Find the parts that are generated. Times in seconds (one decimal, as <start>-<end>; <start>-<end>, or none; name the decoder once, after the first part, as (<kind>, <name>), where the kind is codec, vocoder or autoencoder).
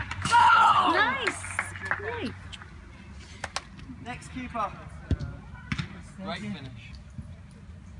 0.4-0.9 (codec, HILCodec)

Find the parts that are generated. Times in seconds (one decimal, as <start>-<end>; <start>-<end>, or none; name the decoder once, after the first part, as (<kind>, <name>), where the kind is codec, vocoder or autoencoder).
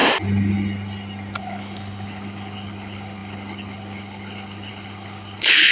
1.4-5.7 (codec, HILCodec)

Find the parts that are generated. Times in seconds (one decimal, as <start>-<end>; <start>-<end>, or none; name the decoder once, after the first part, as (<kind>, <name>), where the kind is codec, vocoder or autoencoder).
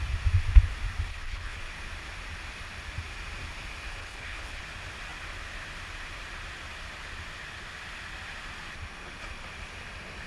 1.1-1.6 (codec, HILCodec); 4.0-4.6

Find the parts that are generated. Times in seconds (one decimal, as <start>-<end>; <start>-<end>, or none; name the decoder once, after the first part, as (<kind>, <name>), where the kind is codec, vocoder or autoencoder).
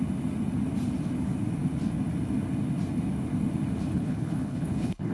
3.9-5.1 (codec, HILCodec)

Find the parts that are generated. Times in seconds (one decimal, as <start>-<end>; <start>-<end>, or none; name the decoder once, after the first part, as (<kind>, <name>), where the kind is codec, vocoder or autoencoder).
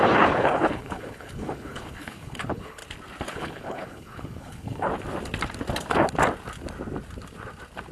0.0-2.8 (codec, HILCodec); 3.3-4.9